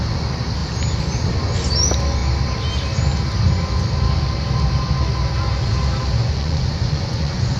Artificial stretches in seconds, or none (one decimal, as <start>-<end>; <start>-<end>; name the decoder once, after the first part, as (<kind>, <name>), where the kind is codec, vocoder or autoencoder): 6.2-7.6 (vocoder, Vocos)